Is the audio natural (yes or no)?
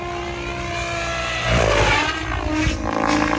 yes